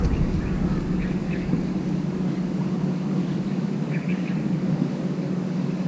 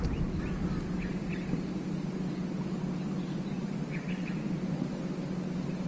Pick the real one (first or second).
second